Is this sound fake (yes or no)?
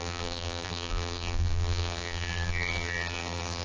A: yes